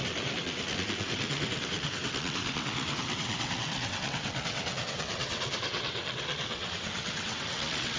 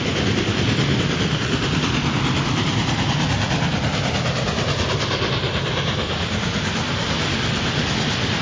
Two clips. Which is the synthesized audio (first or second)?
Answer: first